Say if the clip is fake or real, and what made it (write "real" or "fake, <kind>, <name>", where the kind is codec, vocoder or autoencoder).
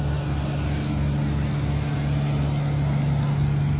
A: real